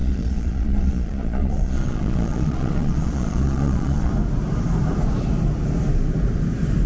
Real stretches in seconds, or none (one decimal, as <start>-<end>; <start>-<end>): 4.1-6.9